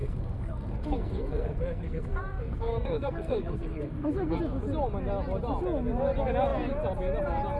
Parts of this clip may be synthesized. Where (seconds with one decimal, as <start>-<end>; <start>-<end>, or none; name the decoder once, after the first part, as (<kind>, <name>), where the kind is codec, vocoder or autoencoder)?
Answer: 0.0-4.4 (codec, SNAC)